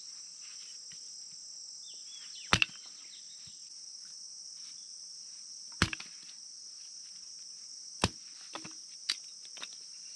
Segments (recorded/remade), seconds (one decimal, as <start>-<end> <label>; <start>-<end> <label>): 0.0-10.2 recorded